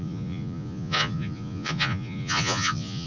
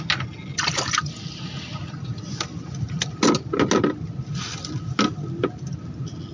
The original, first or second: second